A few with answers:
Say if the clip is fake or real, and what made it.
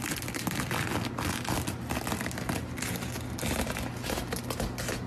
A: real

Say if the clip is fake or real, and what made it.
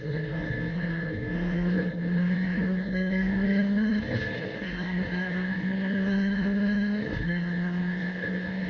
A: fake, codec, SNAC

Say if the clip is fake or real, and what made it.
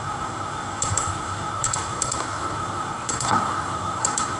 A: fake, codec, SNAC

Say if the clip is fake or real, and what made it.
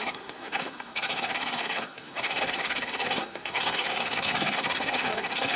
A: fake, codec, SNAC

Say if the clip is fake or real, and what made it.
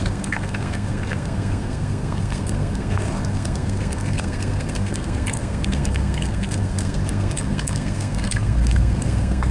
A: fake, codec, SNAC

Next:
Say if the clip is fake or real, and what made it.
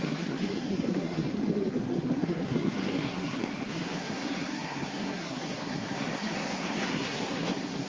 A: fake, codec, SNAC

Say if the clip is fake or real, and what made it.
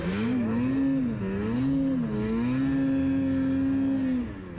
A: real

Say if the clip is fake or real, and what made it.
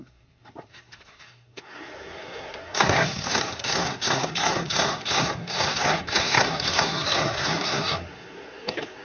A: fake, codec, SNAC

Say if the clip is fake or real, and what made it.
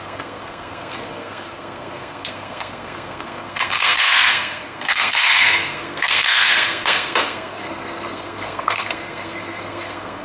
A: fake, codec, SNAC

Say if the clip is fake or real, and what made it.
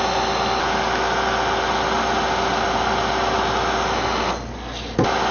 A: real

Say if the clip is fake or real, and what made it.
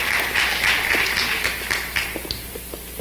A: real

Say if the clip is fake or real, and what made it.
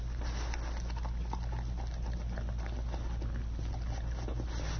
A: real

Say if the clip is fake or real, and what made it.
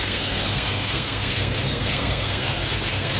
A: fake, codec, SNAC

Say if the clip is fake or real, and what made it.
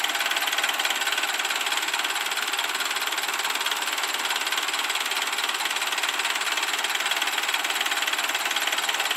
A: real